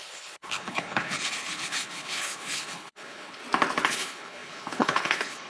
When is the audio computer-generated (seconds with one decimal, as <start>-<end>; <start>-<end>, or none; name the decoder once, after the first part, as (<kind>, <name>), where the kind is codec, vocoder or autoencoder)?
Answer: 0.0-3.4 (codec, HILCodec); 3.9-5.5